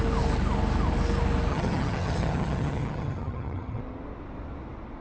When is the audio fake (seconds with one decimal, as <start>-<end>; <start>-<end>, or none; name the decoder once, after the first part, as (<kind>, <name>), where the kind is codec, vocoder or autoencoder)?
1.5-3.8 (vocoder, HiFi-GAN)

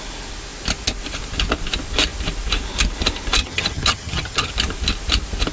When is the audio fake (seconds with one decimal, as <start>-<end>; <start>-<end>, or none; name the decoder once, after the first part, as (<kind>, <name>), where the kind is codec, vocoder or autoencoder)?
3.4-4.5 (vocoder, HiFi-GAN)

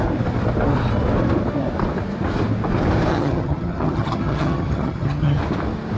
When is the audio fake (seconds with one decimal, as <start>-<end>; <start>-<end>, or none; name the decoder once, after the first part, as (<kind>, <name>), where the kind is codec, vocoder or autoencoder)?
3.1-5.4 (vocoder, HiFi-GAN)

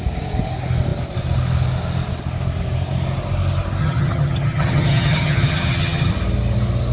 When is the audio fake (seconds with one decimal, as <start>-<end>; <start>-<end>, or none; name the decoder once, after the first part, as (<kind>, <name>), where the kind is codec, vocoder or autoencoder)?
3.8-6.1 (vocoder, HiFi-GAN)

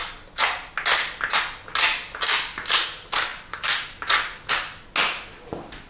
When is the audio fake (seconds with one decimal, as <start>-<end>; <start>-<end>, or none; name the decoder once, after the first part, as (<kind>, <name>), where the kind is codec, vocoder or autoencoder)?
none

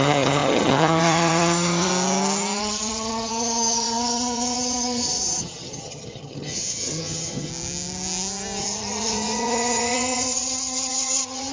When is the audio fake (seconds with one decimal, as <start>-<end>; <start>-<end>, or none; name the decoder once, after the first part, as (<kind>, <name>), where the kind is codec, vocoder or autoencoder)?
0.0-1.9 (vocoder, HiFi-GAN); 2.6-7.5; 8.6-11.5

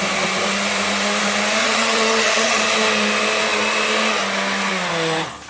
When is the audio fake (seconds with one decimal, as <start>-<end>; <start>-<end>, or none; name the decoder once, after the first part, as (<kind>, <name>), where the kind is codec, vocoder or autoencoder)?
1.6-2.6 (vocoder, HiFi-GAN)

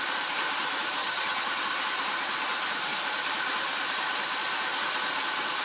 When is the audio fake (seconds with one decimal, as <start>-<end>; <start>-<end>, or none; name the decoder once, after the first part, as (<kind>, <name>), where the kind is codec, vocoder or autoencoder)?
1.0-1.5 (vocoder, HiFi-GAN)